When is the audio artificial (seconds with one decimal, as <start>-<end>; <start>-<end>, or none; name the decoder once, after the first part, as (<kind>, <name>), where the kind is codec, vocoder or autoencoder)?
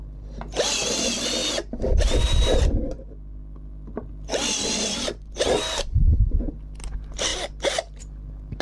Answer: none